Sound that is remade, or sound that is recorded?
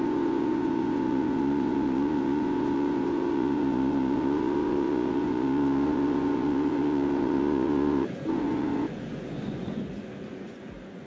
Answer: remade